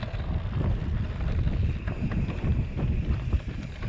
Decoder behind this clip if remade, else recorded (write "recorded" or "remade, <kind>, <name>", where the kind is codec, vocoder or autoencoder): recorded